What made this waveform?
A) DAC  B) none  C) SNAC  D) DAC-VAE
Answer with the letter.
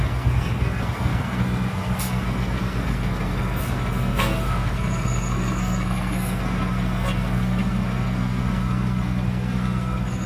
C